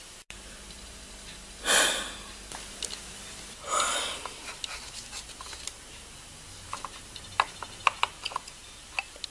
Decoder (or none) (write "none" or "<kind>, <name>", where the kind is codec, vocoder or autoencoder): none